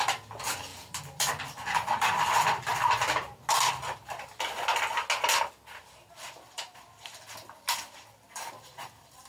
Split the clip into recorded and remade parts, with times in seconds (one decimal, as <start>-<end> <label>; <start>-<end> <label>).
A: 0.0-2.7 remade; 2.7-5.8 recorded; 5.8-9.3 remade